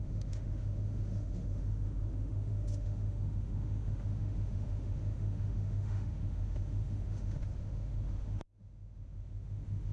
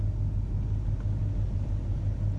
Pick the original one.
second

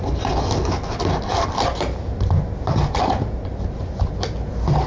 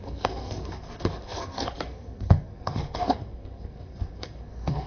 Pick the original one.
first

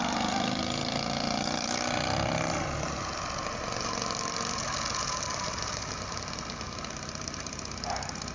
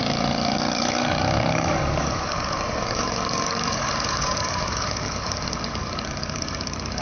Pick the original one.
first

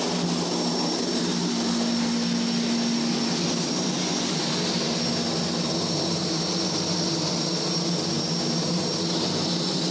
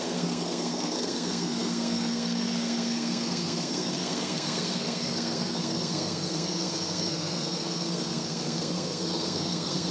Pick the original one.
first